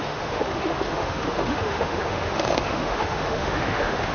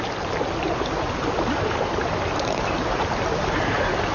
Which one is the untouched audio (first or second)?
second